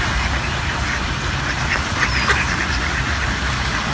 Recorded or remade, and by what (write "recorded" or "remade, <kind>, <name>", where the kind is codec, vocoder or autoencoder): remade, vocoder, BigVGAN v2